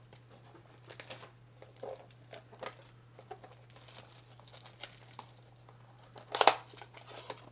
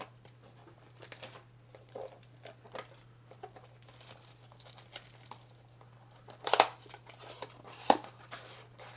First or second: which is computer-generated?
second